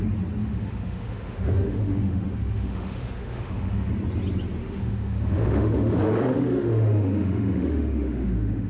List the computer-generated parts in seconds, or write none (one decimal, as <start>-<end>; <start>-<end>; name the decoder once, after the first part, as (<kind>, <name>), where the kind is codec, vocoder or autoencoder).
0.4-3.9 (autoencoder, DAC-VAE); 4.6-8.7

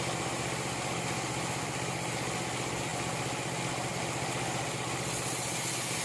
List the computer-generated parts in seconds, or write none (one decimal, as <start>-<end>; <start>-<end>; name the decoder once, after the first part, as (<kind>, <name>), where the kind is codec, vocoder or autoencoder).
none

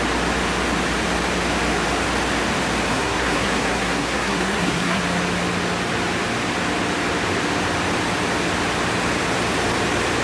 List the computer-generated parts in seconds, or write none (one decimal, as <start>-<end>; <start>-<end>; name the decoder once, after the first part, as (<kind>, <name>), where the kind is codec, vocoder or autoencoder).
2.9-5.0 (codec, SNAC)

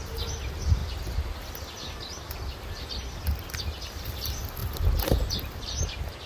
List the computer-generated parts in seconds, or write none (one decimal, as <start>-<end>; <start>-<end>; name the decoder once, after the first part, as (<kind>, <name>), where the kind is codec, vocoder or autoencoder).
none

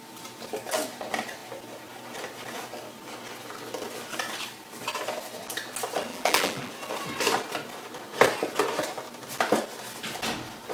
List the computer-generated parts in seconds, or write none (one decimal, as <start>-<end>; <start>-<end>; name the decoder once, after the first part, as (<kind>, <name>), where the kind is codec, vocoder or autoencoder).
6.1-6.7 (vocoder, BigVGAN v2)

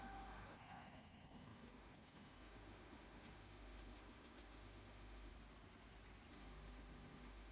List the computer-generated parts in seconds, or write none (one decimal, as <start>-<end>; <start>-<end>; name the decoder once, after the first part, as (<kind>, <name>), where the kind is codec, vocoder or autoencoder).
0.0-5.3 (autoencoder, DAC-VAE); 6.3-7.5